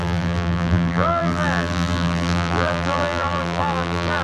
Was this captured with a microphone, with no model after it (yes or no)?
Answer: no